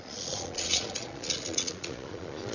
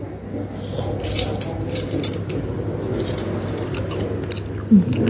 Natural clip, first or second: second